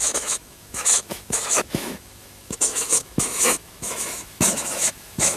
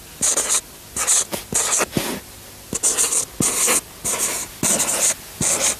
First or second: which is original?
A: second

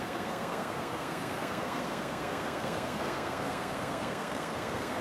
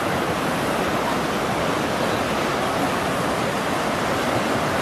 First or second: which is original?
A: second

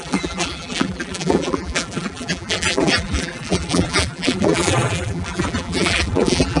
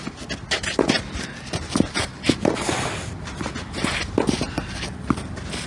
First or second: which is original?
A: second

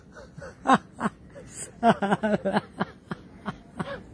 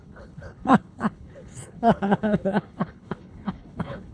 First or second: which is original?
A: first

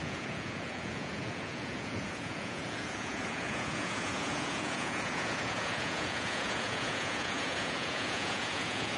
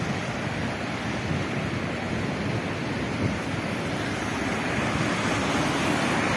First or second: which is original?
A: second